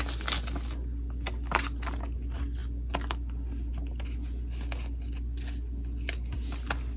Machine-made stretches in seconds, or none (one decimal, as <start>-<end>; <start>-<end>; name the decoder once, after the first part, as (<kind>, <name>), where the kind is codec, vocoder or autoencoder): none